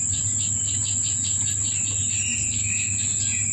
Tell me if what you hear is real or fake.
real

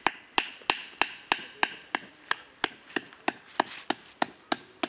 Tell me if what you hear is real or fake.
real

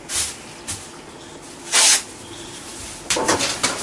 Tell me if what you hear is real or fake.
real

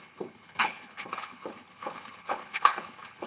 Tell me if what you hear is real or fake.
fake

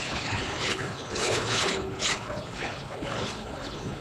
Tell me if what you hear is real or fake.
fake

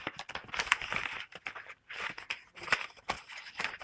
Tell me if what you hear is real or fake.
real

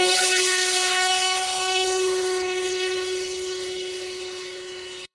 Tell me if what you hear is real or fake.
fake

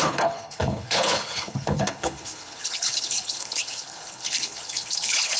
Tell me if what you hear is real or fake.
fake